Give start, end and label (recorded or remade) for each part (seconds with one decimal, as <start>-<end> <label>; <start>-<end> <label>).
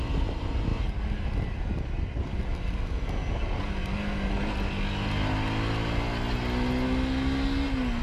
0.0-0.7 remade; 0.7-1.4 recorded; 1.4-3.2 remade; 3.2-8.0 recorded